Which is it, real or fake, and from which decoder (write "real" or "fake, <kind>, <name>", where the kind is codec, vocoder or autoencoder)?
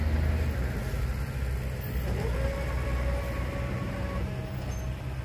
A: real